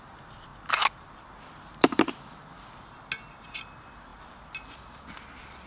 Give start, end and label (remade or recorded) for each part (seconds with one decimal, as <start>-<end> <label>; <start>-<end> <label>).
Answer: 0.0-0.5 recorded; 0.5-2.3 remade; 2.3-5.7 recorded